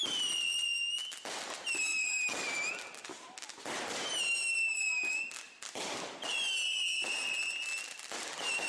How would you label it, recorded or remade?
recorded